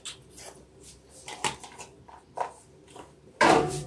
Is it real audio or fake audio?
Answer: real